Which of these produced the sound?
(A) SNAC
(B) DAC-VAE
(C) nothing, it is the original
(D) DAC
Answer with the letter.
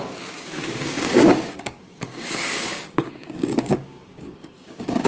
D